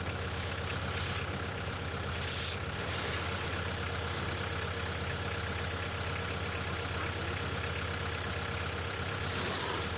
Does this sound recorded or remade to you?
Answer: recorded